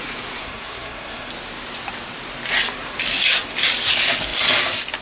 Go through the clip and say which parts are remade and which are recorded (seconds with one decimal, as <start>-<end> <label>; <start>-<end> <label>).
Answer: 0.0-0.4 recorded; 0.4-1.3 remade; 1.3-5.0 recorded